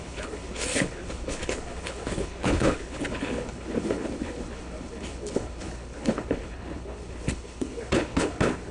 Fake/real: fake